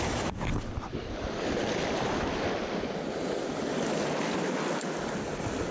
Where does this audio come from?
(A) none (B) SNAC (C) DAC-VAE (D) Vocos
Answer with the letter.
A